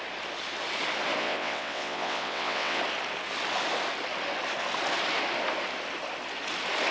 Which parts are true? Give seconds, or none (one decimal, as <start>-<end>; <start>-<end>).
0.0-1.2; 2.8-6.9